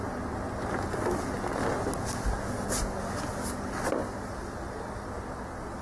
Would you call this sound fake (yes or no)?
no